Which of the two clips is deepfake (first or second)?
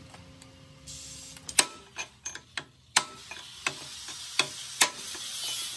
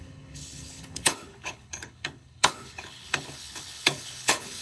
second